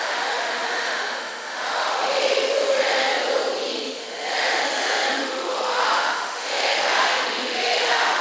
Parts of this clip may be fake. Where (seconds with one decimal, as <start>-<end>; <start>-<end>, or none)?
0.0-3.1; 3.7-8.2